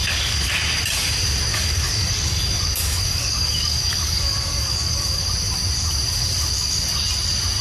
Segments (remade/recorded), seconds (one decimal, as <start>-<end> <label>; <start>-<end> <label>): 0.0-0.5 remade; 0.5-1.5 recorded; 1.5-5.3 remade; 5.3-7.6 recorded